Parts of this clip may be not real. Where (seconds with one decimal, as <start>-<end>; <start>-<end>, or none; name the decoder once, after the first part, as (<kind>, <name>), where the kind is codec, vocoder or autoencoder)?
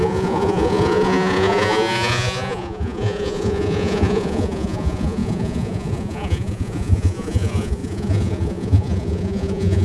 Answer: 0.0-9.8 (vocoder, Vocos)